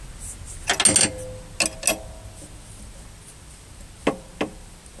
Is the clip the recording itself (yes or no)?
yes